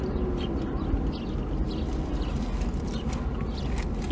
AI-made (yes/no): no